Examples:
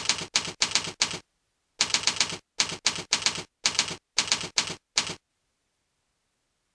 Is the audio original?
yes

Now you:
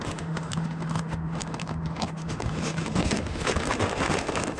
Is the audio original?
no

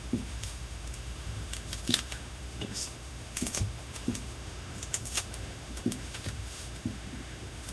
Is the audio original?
no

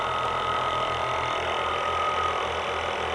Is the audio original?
yes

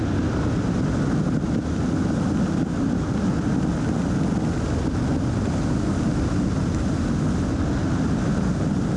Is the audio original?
yes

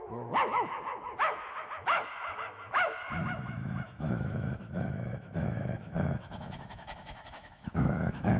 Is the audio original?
no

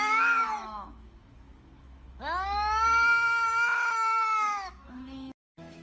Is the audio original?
no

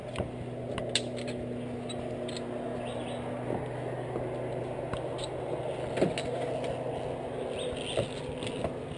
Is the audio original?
yes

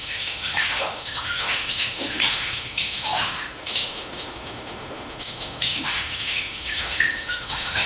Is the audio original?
no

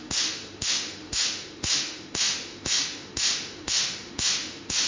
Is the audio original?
no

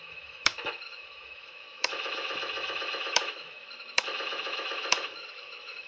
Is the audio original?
no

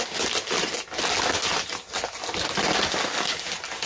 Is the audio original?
yes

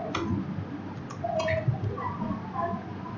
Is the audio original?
yes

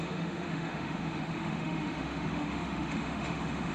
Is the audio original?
no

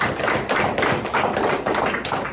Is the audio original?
yes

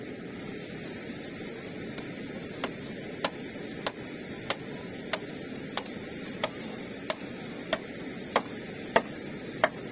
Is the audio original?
yes